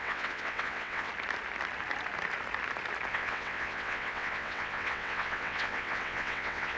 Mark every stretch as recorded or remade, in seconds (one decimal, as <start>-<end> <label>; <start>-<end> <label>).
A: 0.0-1.1 remade; 1.1-3.1 recorded; 3.1-6.8 remade